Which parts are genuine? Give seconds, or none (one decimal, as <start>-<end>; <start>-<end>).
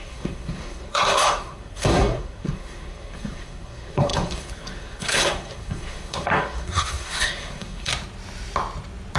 7.9-9.2